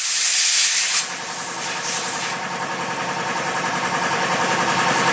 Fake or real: real